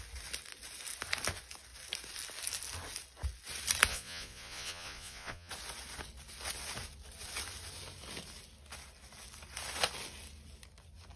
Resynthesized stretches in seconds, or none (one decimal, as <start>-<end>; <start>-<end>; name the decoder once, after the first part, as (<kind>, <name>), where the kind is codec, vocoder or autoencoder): 3.9-5.5 (vocoder, Vocos)